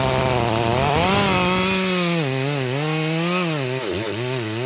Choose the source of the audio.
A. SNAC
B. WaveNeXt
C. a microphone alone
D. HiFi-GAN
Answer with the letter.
C